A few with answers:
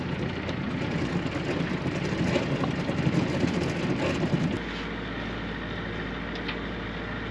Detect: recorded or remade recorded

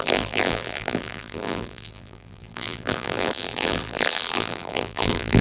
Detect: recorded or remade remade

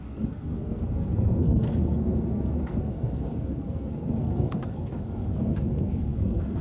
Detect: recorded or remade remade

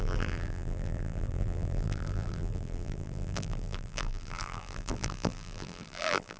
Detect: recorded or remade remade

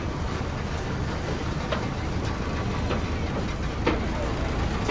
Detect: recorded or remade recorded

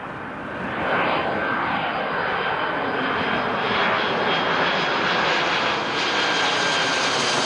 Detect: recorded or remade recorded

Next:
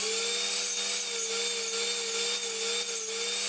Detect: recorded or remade recorded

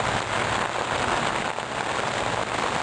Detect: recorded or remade recorded